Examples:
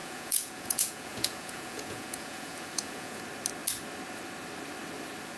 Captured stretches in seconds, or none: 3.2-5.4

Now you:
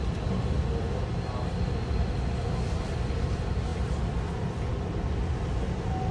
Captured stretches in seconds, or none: 0.0-6.1